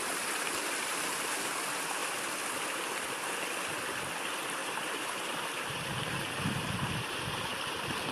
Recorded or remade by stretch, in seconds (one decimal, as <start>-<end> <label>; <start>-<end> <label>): 0.0-4.6 recorded; 4.6-7.4 remade; 7.4-8.1 recorded